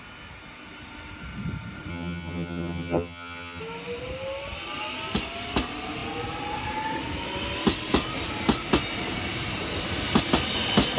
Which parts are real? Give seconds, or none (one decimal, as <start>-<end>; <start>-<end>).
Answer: 0.0-1.9; 3.6-11.0